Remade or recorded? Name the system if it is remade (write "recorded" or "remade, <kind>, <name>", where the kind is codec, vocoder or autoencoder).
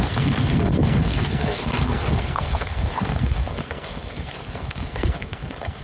remade, codec, SNAC